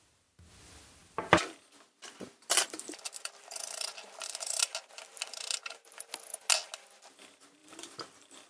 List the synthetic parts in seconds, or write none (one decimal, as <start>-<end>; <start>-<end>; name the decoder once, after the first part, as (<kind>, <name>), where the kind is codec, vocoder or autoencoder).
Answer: 1.0-4.6 (vocoder, BigVGAN v2); 7.6-8.5